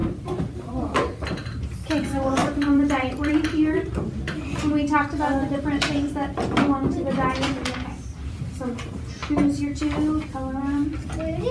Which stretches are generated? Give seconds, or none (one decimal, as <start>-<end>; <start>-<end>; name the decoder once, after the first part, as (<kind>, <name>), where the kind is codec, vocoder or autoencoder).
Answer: 0.0-1.5 (vocoder, BigVGAN v2); 2.4-4.1; 5.4-6.1